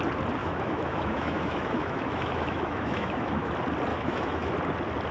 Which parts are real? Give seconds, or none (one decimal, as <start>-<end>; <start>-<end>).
0.0-0.4; 3.5-3.9; 4.5-5.1